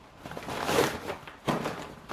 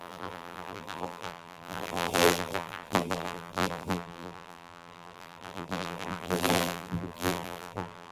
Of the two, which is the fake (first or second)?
second